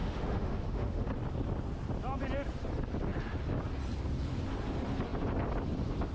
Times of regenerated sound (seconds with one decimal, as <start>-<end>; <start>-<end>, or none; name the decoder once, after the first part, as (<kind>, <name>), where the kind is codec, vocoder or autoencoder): 0.0-1.1 (autoencoder, DAC-VAE)